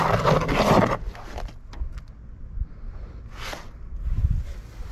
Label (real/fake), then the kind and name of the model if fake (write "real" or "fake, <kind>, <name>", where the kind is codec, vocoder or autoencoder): real